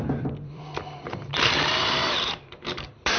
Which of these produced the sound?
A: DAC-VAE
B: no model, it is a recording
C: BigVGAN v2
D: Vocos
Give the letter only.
C